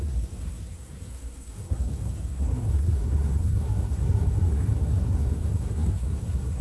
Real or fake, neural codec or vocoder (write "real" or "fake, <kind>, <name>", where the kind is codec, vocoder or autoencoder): fake, codec, SNAC